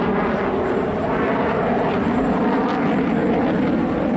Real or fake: real